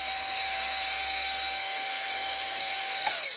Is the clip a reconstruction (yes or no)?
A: yes